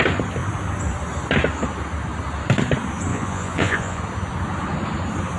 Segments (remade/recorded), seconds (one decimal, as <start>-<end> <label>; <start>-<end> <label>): 0.0-3.1 recorded; 3.1-4.0 remade; 4.0-5.4 recorded